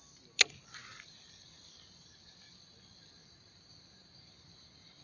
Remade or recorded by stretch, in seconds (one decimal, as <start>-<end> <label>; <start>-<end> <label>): 0.0-5.0 recorded